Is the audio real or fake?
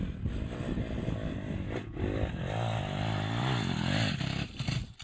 real